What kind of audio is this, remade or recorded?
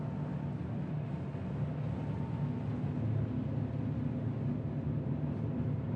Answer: recorded